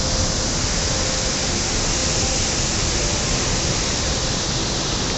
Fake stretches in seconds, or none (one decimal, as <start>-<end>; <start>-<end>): none